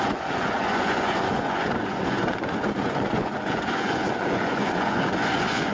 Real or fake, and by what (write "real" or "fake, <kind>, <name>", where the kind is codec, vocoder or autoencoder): fake, vocoder, Vocos